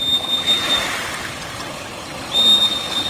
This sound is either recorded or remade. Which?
recorded